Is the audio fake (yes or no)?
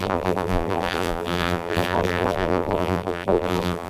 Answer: yes